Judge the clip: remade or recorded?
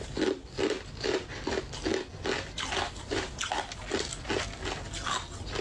recorded